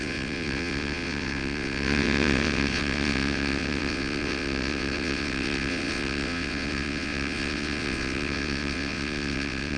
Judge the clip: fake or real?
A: fake